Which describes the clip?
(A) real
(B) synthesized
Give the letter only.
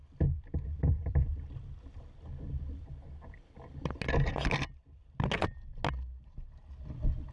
A